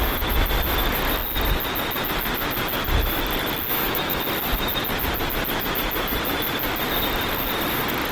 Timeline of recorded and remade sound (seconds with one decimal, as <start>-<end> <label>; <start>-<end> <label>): 0.0-3.7 recorded; 3.7-4.2 remade; 4.2-8.1 recorded